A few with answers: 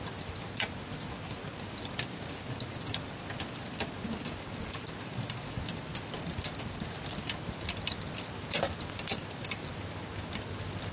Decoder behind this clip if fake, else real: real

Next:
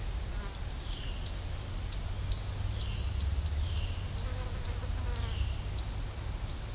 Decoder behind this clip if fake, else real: real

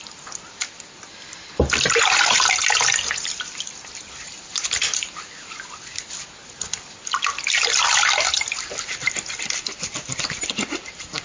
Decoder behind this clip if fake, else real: real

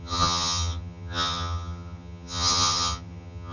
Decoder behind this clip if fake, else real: fake, vocoder, HiFi-GAN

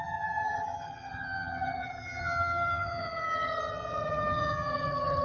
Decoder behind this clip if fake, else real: fake, vocoder, HiFi-GAN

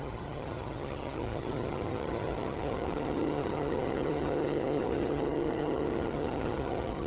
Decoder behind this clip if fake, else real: fake, vocoder, HiFi-GAN